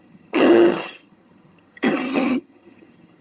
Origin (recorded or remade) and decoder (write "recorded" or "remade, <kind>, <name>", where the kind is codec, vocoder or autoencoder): remade, vocoder, HiFi-GAN